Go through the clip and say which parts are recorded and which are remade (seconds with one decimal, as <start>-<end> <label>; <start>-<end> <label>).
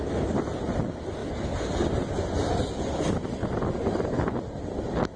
0.0-5.2 recorded